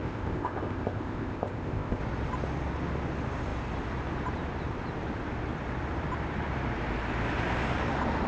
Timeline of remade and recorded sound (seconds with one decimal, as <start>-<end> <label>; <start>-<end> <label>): 0.0-2.0 remade; 2.0-8.3 recorded